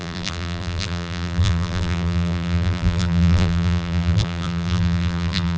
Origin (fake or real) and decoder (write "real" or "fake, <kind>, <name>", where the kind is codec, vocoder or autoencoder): fake, vocoder, BigVGAN v2